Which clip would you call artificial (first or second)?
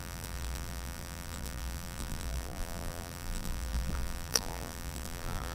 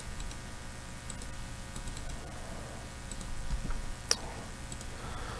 first